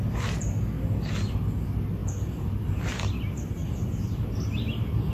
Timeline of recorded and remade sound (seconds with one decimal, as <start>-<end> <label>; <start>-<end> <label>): 0.0-5.1 recorded